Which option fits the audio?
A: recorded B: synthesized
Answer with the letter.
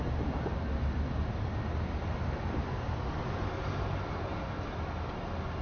A